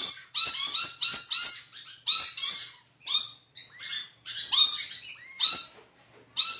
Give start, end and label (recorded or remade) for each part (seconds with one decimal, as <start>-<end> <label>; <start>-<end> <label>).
0.0-0.7 remade; 0.7-1.7 recorded; 1.7-5.7 remade; 5.7-6.6 recorded